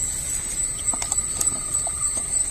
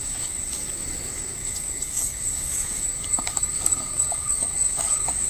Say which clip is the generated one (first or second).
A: second